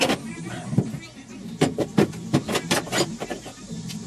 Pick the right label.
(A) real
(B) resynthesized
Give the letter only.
B